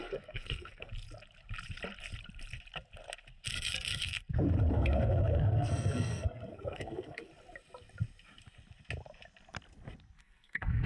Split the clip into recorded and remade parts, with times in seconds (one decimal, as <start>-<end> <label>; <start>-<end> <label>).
0.0-0.9 remade; 0.9-4.7 recorded; 4.7-7.3 remade; 7.3-10.2 recorded; 10.2-10.9 remade